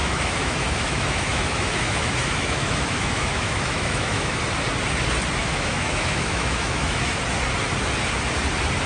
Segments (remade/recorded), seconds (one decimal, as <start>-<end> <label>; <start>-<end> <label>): 0.0-4.4 remade; 4.4-5.4 recorded; 5.4-7.2 remade; 7.2-8.9 recorded